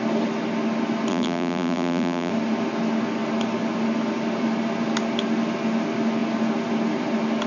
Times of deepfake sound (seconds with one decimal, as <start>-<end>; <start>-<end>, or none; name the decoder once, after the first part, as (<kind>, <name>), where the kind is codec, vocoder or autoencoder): 1.1-2.3 (vocoder, BigVGAN v2)